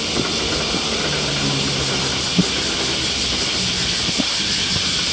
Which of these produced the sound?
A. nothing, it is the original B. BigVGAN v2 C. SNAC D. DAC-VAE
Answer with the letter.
A